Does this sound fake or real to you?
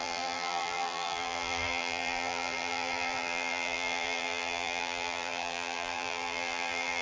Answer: fake